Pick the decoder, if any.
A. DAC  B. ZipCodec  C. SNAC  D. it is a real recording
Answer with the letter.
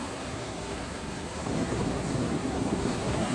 C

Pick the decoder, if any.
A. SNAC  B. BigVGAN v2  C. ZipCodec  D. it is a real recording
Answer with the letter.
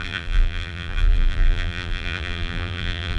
B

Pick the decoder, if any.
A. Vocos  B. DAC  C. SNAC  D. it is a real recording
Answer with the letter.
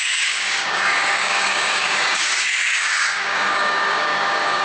B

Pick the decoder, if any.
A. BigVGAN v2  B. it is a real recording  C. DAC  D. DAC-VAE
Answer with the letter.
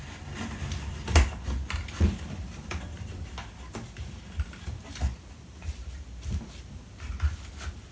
B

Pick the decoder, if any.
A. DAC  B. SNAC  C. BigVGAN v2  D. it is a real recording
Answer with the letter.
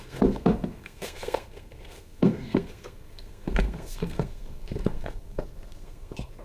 B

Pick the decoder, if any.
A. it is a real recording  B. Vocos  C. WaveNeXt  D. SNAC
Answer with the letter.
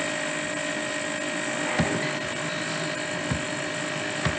A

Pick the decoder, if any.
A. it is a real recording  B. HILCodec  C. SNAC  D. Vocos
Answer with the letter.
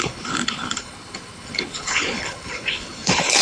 B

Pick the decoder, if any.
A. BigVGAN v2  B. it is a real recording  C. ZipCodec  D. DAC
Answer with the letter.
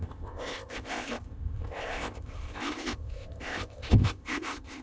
C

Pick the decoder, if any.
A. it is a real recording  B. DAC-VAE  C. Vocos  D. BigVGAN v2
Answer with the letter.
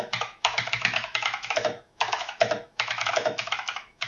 B